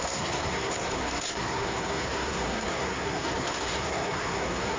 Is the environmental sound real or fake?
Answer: fake